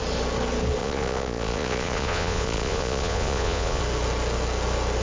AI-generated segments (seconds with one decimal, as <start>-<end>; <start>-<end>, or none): 0.8-3.8